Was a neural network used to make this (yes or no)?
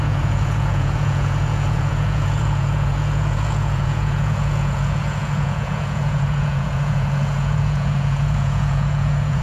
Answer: yes